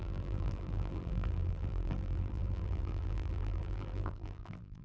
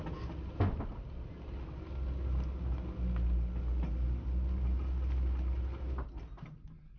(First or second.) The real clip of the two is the second